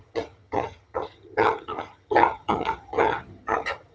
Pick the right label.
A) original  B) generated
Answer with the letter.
B